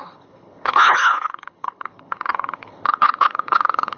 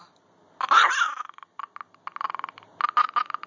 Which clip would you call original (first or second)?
second